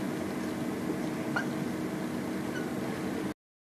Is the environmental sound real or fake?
real